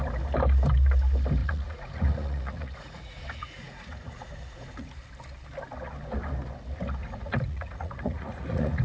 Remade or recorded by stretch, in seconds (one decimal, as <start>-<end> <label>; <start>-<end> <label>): 0.0-1.4 recorded; 1.4-5.0 remade; 5.0-7.0 recorded; 7.0-8.8 remade